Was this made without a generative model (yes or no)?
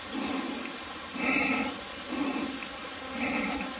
yes